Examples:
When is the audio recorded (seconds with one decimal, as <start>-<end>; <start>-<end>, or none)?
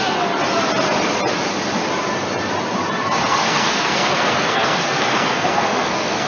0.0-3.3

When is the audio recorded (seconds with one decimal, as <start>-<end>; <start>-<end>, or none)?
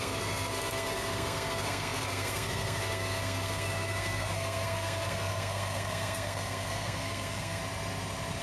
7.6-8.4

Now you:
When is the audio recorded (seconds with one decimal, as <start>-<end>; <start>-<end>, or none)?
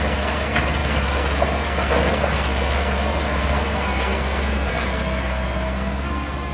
none